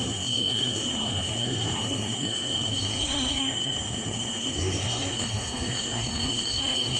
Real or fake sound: fake